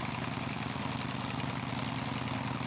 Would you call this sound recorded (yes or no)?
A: yes